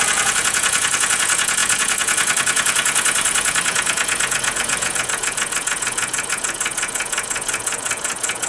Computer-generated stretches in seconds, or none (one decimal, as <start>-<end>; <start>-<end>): 0.0-8.5